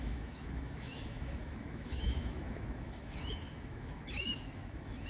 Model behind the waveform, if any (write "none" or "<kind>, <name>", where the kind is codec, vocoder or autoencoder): autoencoder, DAC-VAE